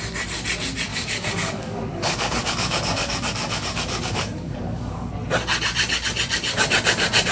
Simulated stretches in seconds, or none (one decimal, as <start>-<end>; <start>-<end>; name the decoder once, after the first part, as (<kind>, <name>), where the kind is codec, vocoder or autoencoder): 0.9-5.1 (codec, DAC)